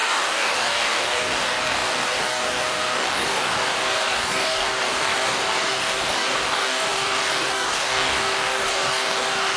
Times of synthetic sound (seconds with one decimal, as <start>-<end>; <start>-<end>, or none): 0.0-9.6